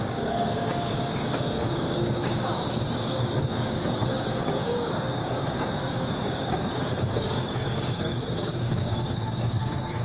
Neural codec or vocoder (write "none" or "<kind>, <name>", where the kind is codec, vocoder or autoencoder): codec, DAC